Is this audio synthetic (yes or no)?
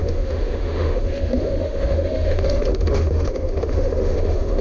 yes